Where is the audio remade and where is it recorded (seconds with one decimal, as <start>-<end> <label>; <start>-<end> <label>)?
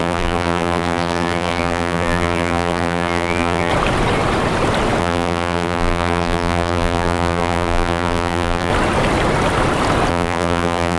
0.0-3.7 remade; 3.7-5.0 recorded; 5.0-8.7 remade; 8.7-10.1 recorded; 10.1-11.0 remade